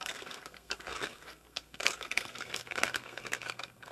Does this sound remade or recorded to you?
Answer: remade